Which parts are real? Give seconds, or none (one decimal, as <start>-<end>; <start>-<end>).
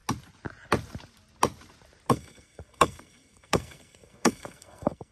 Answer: 0.0-2.1